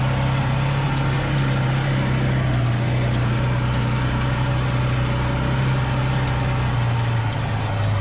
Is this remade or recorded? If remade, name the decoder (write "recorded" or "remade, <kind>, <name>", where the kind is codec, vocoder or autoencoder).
recorded